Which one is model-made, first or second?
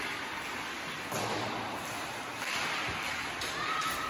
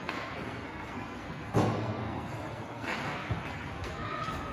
second